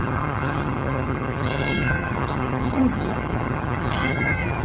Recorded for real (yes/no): no